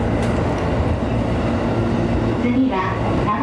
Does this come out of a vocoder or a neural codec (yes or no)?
no